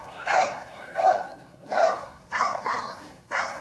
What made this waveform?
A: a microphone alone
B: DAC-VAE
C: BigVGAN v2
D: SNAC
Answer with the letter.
D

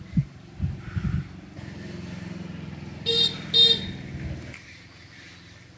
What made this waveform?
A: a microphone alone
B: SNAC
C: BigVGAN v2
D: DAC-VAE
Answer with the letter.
A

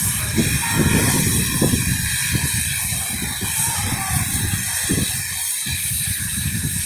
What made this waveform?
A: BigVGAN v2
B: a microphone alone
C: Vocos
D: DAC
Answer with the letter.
B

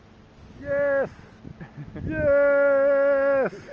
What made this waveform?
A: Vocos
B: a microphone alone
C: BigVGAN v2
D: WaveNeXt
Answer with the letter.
B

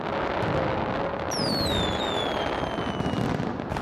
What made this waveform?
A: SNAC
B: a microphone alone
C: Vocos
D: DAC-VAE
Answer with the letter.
B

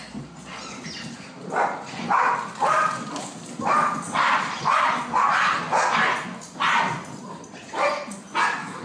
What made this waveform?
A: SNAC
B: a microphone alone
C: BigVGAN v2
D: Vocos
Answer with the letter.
B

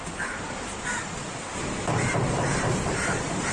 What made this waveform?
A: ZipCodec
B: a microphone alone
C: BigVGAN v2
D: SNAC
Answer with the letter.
C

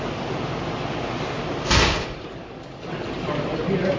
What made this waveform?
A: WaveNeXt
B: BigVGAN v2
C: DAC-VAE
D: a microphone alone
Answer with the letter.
D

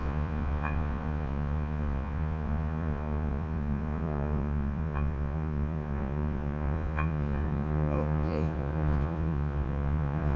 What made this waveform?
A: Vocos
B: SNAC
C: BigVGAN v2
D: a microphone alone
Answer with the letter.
A